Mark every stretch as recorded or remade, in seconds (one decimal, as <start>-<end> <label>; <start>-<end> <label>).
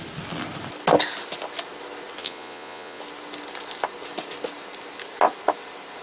0.0-2.2 recorded; 2.2-3.0 remade; 3.0-6.0 recorded